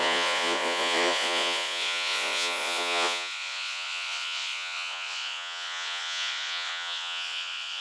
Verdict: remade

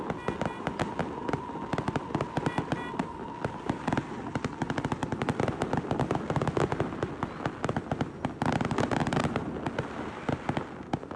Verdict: recorded